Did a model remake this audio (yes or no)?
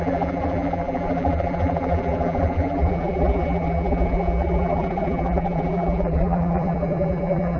yes